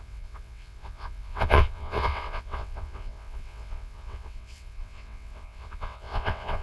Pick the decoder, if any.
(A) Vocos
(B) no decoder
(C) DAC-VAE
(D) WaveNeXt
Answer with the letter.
D